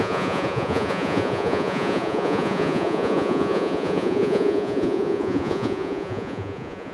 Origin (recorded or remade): remade